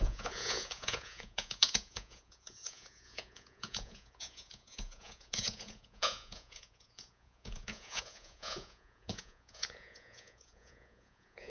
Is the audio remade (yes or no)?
yes